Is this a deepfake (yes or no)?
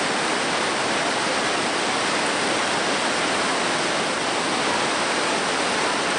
no